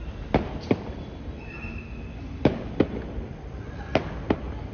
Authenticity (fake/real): real